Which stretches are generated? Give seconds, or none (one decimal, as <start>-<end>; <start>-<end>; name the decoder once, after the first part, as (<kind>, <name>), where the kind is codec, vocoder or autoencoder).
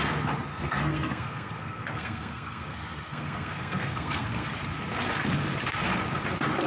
0.5-4.5 (codec, SNAC)